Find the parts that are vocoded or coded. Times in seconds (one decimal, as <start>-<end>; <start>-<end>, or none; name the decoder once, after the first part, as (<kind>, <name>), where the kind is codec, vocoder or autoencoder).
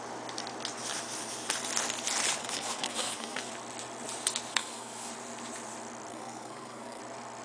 2.4-3.5 (codec, SNAC); 4.5-5.1; 6.1-7.0